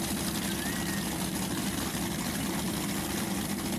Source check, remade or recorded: recorded